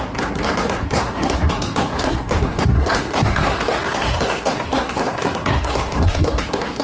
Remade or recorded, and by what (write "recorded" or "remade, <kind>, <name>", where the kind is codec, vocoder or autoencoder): remade, codec, SNAC